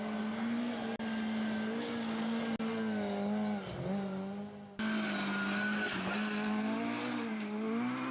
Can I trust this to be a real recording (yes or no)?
yes